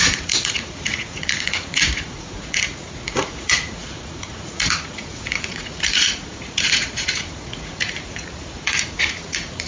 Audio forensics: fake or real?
fake